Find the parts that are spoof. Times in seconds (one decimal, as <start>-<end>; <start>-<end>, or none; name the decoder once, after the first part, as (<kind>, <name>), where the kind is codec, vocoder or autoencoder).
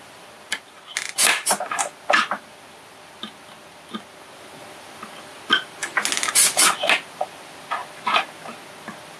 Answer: none